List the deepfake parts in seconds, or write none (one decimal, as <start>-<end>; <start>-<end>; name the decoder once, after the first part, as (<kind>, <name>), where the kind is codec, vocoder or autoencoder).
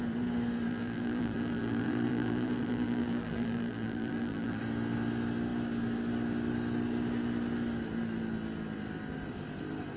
0.7-4.6 (vocoder, BigVGAN v2)